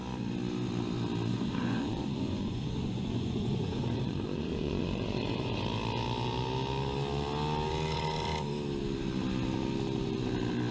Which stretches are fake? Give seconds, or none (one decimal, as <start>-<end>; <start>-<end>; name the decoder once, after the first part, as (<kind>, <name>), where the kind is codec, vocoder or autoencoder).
1.3-5.6 (vocoder, Vocos)